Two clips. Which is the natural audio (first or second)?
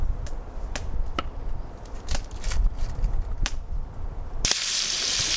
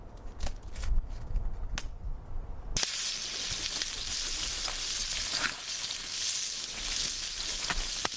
second